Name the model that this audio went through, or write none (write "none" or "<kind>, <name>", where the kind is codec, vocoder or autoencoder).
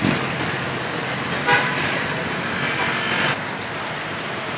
none